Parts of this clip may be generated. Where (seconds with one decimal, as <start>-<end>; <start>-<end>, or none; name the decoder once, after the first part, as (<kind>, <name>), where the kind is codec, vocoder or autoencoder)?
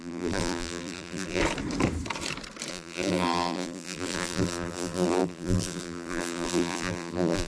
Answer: 0.0-1.4 (vocoder, BigVGAN v2); 2.7-7.5